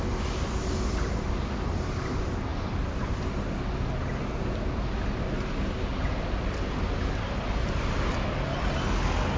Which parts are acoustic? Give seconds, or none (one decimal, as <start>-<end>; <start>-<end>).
0.0-9.4